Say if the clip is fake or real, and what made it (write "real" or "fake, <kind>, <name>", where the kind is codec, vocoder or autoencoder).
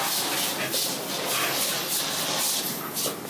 real